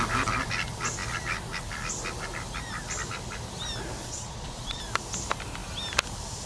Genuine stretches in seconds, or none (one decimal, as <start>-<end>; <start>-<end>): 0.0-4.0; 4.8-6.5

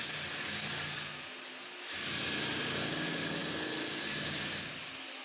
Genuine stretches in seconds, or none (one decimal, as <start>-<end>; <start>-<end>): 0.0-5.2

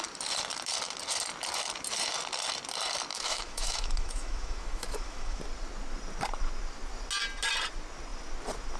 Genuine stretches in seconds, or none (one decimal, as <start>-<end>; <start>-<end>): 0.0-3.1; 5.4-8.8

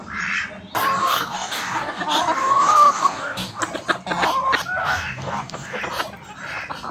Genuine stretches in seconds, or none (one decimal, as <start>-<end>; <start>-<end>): 0.0-1.0; 2.0-2.4; 3.6-4.8; 5.8-6.9

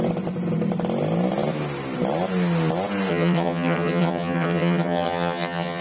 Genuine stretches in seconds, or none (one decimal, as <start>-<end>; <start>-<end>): 0.0-3.1